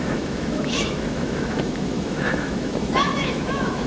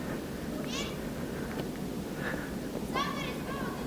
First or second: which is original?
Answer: second